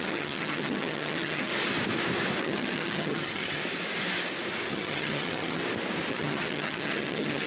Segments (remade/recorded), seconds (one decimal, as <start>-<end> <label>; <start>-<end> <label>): 0.0-1.5 remade; 1.5-2.4 recorded; 2.4-3.6 remade; 3.6-4.7 recorded; 4.7-5.6 remade; 5.6-6.1 recorded; 6.1-7.5 remade